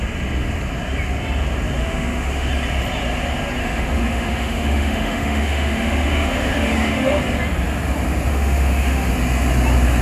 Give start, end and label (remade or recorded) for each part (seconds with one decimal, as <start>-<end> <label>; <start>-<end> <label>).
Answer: 0.0-1.8 recorded; 1.8-2.5 remade; 2.5-3.6 recorded; 3.6-7.2 remade; 7.2-8.3 recorded; 8.3-9.1 remade; 9.1-10.0 recorded